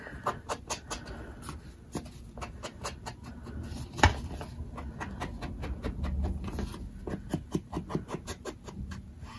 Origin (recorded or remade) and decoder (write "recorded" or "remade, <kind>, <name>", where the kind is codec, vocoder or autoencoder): recorded